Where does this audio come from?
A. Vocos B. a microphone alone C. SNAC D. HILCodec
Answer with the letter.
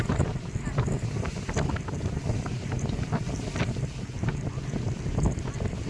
B